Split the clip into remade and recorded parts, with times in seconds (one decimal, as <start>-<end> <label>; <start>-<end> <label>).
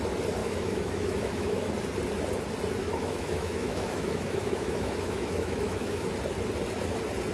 0.0-0.4 recorded; 0.4-1.7 remade; 1.7-2.8 recorded; 2.8-6.0 remade; 6.0-7.3 recorded